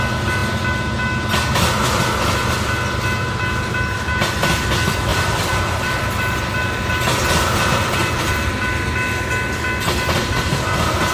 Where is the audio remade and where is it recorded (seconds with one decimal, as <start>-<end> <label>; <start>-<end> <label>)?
0.0-5.1 recorded; 5.1-8.1 remade; 8.1-11.1 recorded

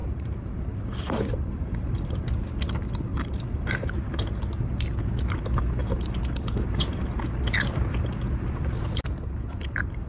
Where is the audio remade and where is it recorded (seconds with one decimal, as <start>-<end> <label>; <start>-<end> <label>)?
0.0-2.1 remade; 2.1-3.1 recorded; 3.1-3.9 remade; 3.9-5.8 recorded; 5.8-6.6 remade; 6.6-10.1 recorded